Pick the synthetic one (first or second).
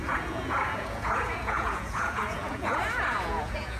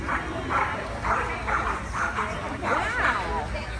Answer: first